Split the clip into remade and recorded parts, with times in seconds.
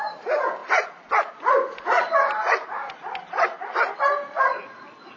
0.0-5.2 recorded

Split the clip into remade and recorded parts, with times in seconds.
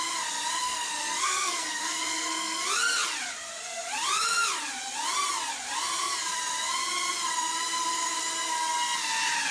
0.0-0.6 recorded; 0.6-2.6 remade; 2.6-9.5 recorded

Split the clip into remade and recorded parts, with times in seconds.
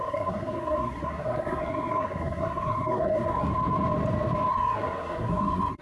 0.0-3.5 remade; 3.5-4.5 recorded; 4.5-5.8 remade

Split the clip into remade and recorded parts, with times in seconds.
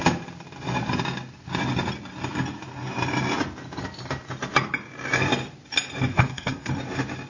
0.0-6.1 recorded; 6.1-6.7 remade; 6.7-7.3 recorded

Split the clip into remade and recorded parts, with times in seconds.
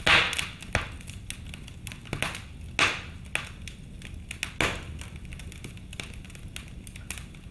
0.0-7.5 recorded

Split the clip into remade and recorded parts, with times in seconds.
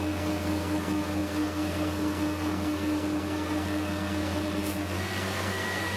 0.0-6.0 remade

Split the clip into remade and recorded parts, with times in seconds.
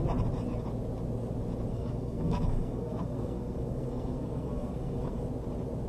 0.0-1.7 recorded; 1.7-5.2 remade; 5.2-5.9 recorded